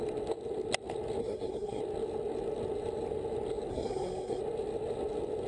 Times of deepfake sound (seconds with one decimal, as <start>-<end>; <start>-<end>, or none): 1.2-1.8; 3.7-4.4